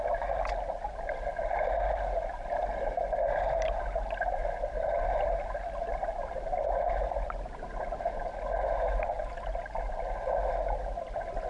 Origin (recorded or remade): recorded